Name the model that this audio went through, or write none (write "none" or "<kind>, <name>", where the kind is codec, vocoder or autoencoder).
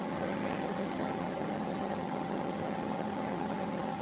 vocoder, HiFi-GAN